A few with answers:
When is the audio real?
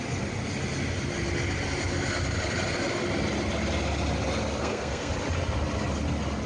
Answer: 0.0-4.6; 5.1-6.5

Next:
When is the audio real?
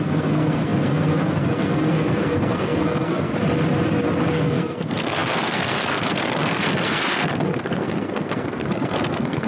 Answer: 3.3-4.3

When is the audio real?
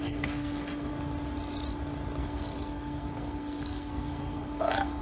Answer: 0.9-2.2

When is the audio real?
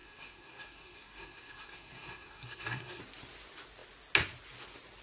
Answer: 3.0-5.0